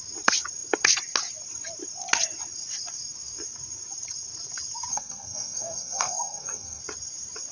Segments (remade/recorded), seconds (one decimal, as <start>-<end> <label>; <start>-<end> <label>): 0.0-4.9 recorded; 4.9-6.8 remade; 6.8-7.5 recorded